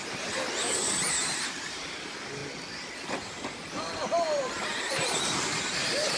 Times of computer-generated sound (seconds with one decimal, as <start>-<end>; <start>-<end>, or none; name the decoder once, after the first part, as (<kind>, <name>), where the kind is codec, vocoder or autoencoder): 0.0-2.4 (vocoder, BigVGAN v2); 4.5-6.2